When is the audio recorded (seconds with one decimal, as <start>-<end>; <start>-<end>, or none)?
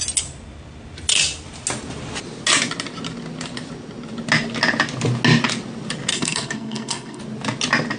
0.0-6.1; 7.2-8.0